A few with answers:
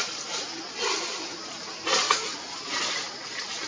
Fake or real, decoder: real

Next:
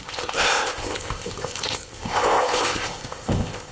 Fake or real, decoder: fake, codec, ZipCodec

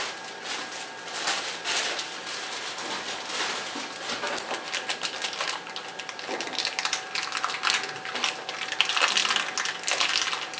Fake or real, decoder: real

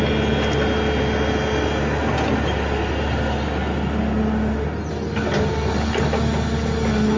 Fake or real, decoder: real